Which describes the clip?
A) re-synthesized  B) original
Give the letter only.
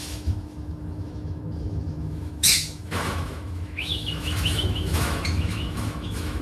A